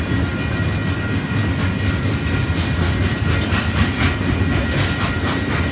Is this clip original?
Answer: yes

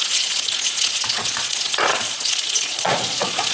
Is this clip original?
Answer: no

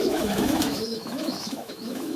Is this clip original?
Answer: no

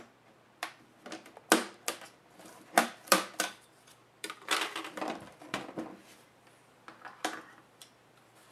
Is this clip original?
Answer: no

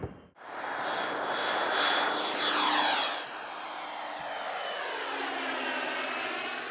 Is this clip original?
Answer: yes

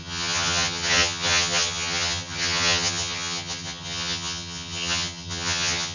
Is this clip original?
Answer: no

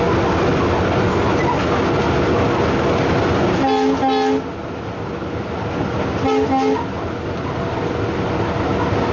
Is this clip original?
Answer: yes